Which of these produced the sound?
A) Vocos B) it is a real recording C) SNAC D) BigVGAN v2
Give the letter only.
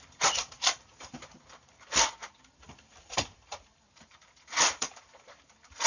D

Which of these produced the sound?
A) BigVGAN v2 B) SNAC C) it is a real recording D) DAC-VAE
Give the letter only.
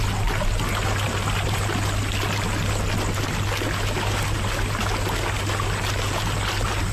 C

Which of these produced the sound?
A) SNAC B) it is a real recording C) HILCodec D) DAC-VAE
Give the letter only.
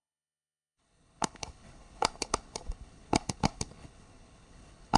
C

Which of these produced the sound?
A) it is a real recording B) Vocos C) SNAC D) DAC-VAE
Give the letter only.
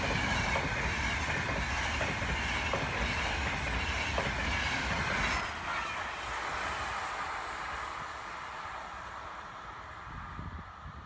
A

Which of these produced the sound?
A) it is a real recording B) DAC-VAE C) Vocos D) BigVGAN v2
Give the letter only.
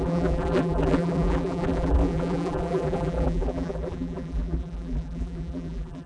D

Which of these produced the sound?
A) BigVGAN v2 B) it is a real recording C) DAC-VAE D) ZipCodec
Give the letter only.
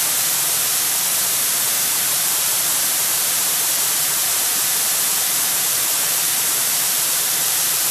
A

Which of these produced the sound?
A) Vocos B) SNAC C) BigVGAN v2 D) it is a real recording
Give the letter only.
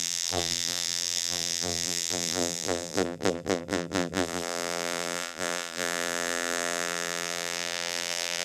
C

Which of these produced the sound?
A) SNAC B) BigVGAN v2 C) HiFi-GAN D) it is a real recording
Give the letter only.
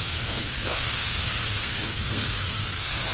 A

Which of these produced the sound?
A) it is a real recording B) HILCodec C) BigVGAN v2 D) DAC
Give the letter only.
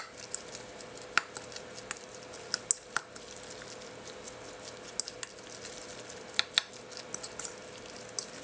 A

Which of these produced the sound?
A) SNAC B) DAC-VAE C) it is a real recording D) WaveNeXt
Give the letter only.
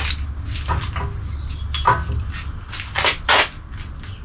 C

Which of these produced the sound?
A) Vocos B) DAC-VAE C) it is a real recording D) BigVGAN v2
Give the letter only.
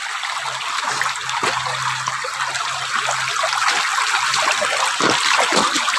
C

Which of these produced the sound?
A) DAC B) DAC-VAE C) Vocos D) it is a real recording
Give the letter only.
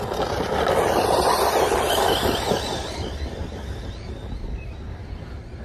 D